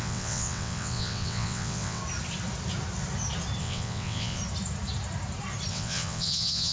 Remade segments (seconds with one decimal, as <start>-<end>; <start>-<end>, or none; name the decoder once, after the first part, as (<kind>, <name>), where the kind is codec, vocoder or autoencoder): 0.0-2.0 (vocoder, WaveNeXt); 3.6-4.4; 5.7-6.7